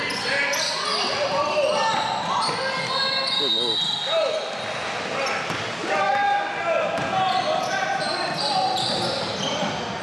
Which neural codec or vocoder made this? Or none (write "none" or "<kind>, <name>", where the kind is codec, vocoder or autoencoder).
none